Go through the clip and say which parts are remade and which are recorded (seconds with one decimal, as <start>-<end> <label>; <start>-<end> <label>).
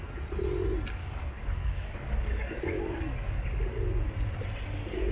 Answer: 0.0-1.0 recorded; 1.0-3.8 remade; 3.8-5.1 recorded